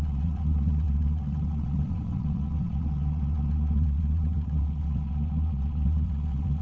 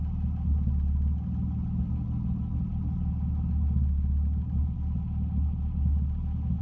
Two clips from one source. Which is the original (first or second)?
second